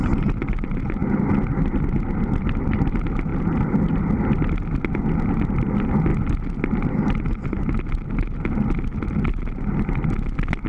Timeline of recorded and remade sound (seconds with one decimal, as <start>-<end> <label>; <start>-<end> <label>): 0.0-10.7 recorded